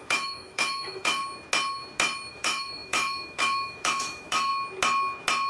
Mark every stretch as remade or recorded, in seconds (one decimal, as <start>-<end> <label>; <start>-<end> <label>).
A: 0.0-1.2 remade; 1.2-2.3 recorded; 2.3-4.5 remade; 4.5-5.5 recorded